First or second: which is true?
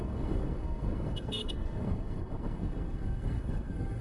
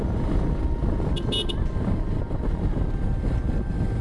second